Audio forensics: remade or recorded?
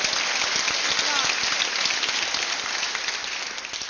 recorded